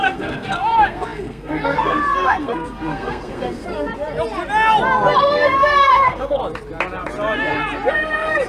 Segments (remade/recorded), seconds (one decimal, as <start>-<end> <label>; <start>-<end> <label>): 0.0-3.9 remade; 3.9-5.2 recorded; 5.2-6.4 remade; 6.4-7.9 recorded; 7.9-8.5 remade